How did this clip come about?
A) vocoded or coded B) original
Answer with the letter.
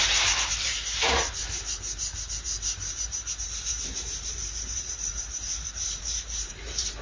A